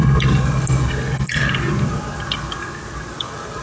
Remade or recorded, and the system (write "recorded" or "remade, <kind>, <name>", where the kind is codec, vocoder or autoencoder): recorded